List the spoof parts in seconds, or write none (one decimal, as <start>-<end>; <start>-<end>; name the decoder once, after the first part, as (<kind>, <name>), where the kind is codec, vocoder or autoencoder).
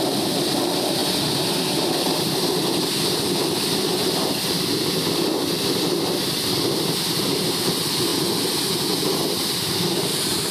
0.0-1.0 (vocoder, BigVGAN v2); 4.3-10.5